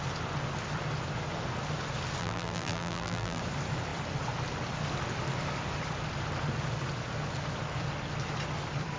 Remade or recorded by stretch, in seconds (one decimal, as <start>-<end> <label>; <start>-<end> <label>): 0.0-2.2 recorded; 2.2-3.4 remade; 3.4-9.0 recorded